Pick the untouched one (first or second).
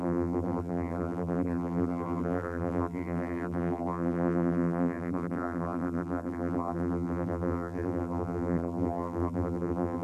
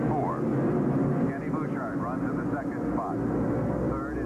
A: second